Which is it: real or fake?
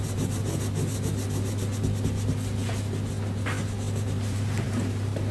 real